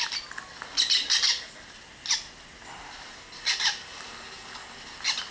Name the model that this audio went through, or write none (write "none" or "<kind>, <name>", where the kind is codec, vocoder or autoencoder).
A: none